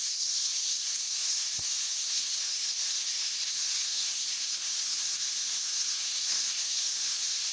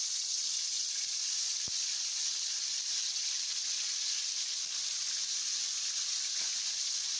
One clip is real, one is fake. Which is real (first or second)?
second